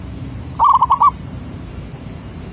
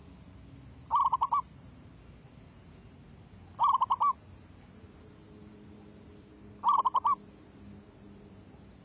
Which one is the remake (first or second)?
first